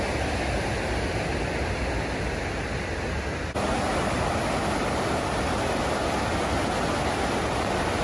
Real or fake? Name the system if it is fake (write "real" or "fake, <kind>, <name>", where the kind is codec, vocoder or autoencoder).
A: real